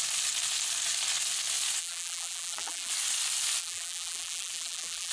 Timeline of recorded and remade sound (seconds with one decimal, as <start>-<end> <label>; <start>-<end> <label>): 0.0-1.8 recorded; 1.8-2.9 remade; 2.9-3.6 recorded; 3.6-5.1 remade